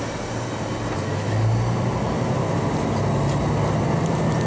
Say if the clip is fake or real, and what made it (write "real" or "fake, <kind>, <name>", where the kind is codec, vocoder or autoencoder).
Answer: real